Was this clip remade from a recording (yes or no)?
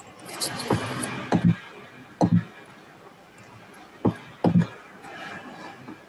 no